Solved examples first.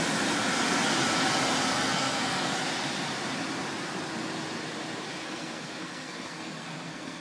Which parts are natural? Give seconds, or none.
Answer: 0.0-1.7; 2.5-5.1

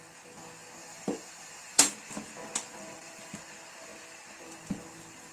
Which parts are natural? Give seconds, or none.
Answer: 0.0-0.8; 1.9-2.7; 3.3-5.3

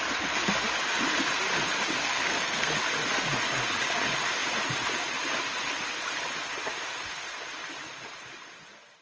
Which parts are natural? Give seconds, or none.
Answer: 0.0-2.0; 2.7-9.0

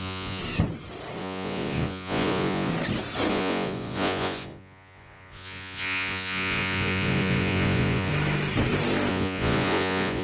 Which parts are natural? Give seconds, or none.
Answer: 0.4-1.2; 2.7-3.3; 8.1-9.1

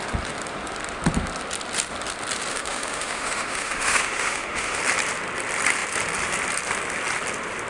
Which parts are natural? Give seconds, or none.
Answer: 0.0-2.5; 4.8-7.7

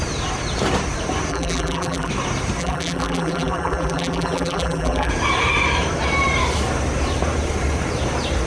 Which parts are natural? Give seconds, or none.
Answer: 0.0-1.3; 2.1-2.6; 5.1-8.5